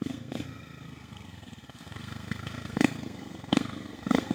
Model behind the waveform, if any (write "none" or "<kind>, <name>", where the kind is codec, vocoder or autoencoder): codec, SNAC